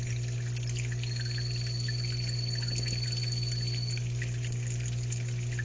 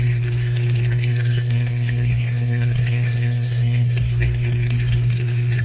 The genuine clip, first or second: first